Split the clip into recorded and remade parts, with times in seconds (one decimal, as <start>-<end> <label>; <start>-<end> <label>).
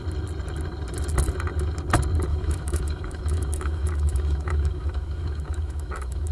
0.0-2.3 recorded; 2.3-6.3 remade